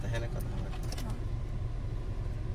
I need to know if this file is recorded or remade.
recorded